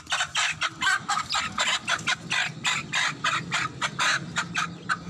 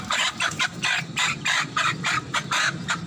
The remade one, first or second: second